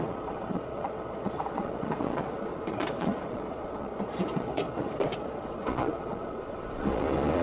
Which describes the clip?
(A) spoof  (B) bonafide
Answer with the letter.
A